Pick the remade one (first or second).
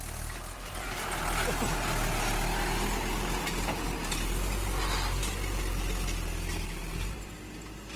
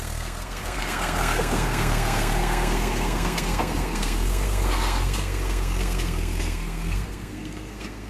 second